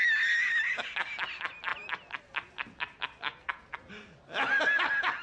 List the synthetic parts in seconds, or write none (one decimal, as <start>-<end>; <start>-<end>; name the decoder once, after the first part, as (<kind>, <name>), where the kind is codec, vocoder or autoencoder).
none